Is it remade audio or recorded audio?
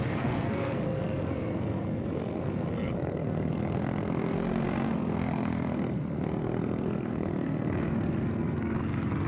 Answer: remade